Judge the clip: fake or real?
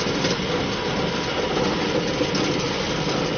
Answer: real